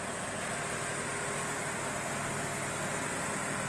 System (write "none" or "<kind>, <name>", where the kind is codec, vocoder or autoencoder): none